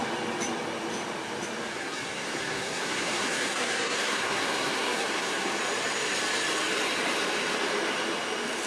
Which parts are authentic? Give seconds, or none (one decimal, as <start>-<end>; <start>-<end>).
0.0-1.7; 5.6-8.7